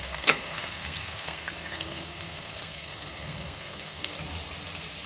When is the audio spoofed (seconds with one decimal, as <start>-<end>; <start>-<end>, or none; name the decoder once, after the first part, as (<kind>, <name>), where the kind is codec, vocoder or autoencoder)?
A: 0.0-4.1 (codec, SNAC)